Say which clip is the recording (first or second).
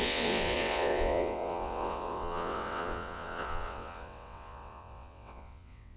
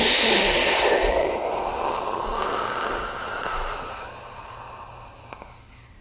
second